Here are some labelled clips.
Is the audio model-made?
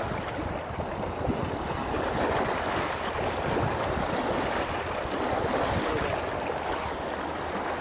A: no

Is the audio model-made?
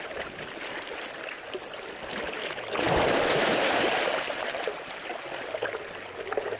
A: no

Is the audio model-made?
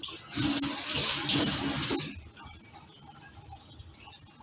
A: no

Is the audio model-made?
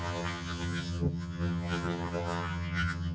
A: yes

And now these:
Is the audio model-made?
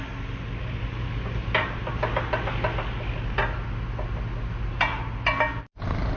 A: no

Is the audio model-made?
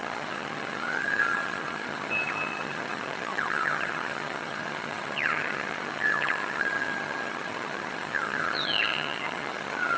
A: yes